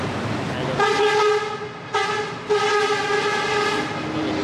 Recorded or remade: recorded